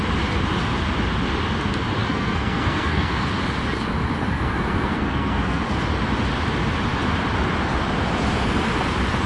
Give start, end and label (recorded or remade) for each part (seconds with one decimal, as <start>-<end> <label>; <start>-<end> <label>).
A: 0.0-2.0 recorded; 2.0-3.3 remade; 3.3-4.2 recorded; 4.2-5.6 remade; 5.6-9.3 recorded